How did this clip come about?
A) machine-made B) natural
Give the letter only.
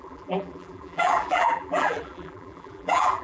A